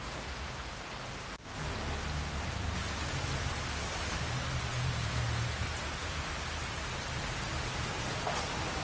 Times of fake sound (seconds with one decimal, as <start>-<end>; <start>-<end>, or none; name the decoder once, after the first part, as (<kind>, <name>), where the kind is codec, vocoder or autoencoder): 0.0-0.9 (vocoder, Vocos); 4.7-6.2